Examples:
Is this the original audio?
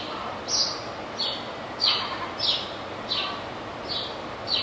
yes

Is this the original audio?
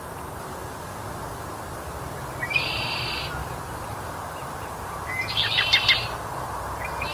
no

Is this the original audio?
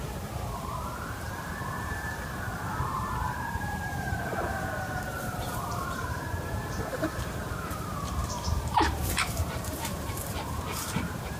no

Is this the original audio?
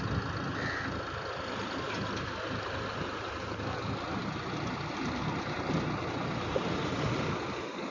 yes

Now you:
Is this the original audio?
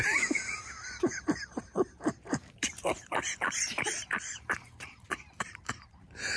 no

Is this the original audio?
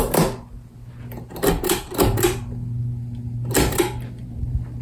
yes